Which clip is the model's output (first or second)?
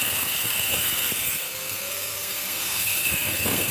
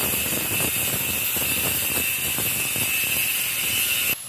first